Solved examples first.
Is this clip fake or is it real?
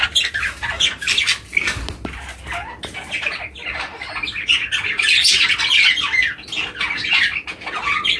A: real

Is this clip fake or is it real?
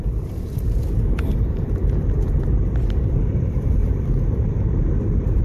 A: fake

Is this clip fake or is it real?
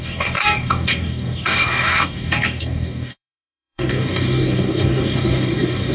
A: fake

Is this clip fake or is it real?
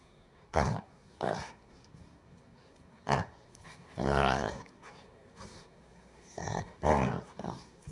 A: fake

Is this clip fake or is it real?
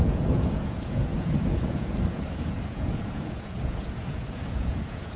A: fake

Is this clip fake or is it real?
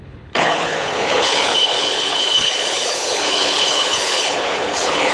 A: fake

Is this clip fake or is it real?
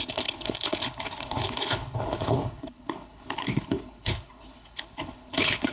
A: fake